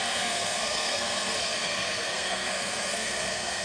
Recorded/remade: remade